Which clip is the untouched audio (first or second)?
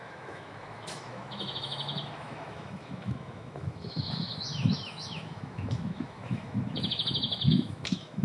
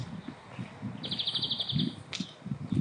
second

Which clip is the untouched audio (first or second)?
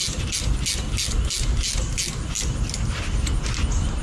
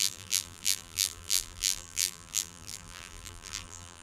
first